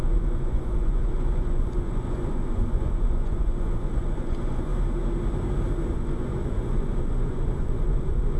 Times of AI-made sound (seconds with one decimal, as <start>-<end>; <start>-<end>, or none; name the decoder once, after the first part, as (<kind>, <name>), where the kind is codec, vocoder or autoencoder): 0.0-4.7 (vocoder, Vocos); 5.9-8.4